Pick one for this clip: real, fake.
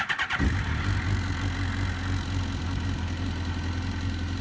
real